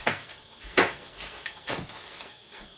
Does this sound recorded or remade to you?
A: remade